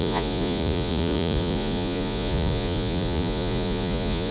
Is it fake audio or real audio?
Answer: fake